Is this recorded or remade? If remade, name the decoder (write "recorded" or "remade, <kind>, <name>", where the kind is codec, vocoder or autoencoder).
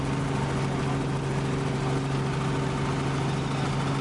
recorded